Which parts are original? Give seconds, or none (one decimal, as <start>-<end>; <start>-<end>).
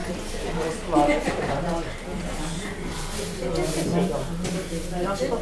3.2-5.4